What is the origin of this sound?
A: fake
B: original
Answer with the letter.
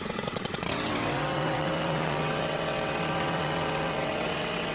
A